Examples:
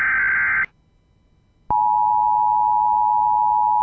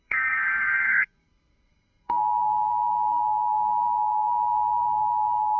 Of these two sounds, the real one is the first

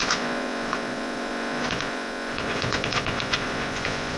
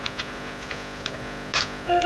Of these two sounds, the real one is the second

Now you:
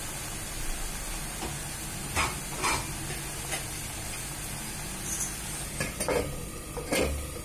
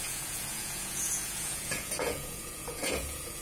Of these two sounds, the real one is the first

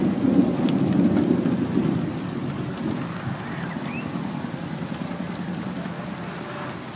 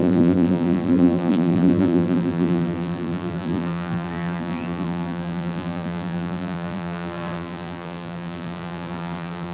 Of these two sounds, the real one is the first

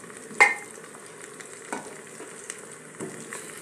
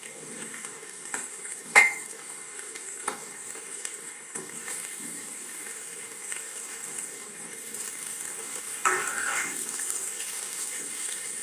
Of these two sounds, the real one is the first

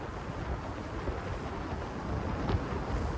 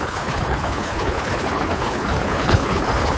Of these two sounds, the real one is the first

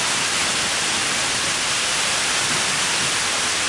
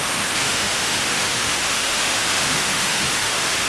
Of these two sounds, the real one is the first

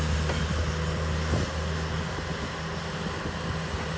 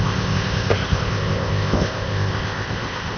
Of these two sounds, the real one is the first